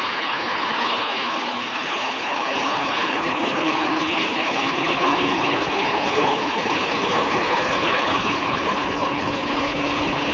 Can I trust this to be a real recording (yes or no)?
no